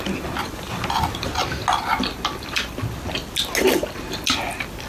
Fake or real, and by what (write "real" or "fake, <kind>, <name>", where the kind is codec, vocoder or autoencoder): real